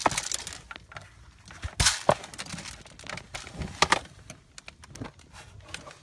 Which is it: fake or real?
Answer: real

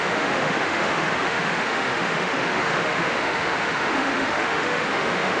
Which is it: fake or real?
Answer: fake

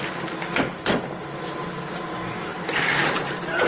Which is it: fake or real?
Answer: real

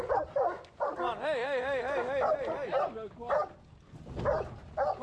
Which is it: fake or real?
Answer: real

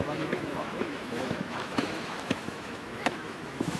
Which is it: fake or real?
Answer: fake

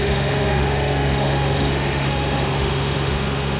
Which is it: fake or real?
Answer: fake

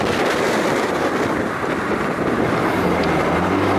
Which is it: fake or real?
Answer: real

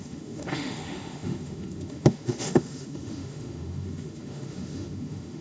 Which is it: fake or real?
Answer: fake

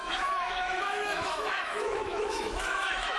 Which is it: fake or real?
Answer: fake